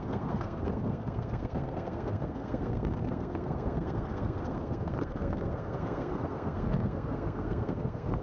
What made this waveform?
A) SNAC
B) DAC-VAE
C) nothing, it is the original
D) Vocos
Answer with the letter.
A